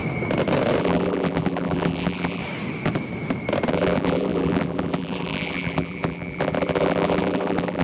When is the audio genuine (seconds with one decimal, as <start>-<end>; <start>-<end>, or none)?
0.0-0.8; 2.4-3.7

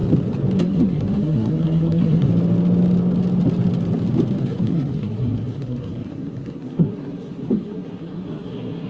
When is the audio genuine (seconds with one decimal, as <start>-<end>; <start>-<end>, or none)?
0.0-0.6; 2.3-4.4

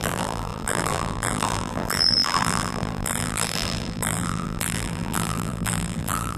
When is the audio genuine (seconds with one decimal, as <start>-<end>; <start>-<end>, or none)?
none

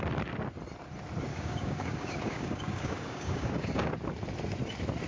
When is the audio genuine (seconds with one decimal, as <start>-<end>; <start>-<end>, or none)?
0.0-1.3; 3.9-5.1